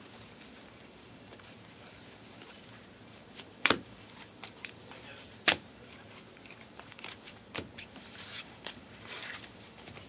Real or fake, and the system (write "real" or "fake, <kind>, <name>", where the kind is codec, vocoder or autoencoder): fake, vocoder, BigVGAN v2